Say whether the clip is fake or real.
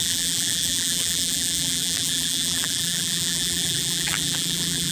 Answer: fake